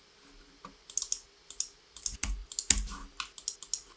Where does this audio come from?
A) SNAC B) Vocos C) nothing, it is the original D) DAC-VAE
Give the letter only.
C